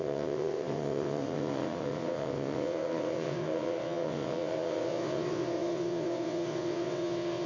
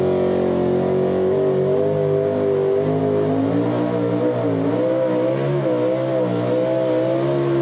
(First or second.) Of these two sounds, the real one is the second